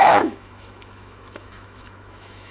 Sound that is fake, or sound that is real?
fake